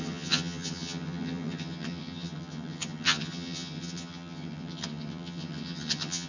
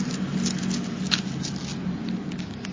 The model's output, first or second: first